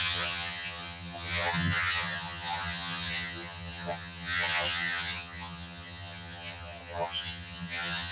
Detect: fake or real fake